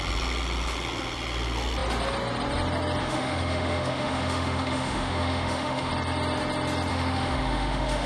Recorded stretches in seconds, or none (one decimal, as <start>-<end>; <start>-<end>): 0.0-3.0; 5.9-6.9